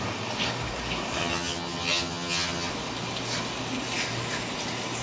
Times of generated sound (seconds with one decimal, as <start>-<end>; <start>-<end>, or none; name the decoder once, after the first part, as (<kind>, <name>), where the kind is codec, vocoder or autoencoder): 1.2-2.7 (vocoder, HiFi-GAN)

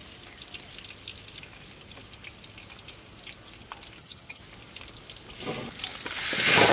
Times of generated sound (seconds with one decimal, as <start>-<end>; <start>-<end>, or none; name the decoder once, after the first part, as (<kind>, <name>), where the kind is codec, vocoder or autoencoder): 4.0-4.4 (vocoder, HiFi-GAN)